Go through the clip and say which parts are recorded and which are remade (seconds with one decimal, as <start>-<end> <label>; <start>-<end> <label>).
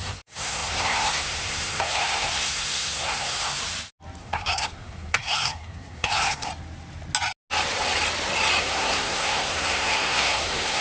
0.0-3.6 remade; 3.6-4.2 recorded; 4.2-6.5 remade; 6.5-8.6 recorded; 8.6-10.8 remade